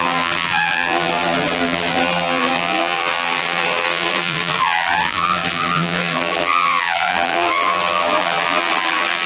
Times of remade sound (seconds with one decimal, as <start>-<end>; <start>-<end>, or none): 0.0-9.3